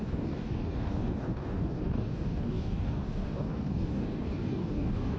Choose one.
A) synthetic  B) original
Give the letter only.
A